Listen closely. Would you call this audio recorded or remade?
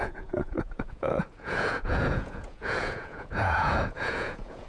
remade